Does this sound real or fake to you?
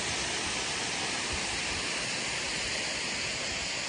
real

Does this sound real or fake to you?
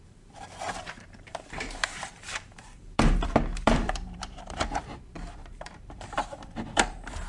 fake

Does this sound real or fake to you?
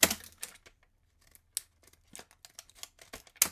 real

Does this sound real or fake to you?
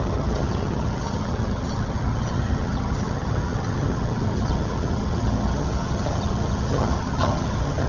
fake